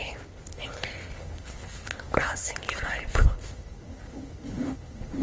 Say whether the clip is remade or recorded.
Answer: remade